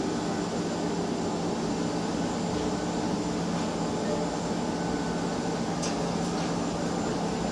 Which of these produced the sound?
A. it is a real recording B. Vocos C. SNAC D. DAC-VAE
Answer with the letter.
A